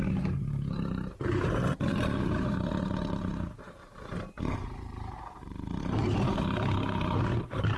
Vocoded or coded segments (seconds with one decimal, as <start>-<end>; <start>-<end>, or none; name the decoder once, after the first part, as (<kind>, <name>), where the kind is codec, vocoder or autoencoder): 0.0-7.8 (vocoder, BigVGAN v2)